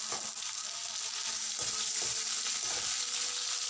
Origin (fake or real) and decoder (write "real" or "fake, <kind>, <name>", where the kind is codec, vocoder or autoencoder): real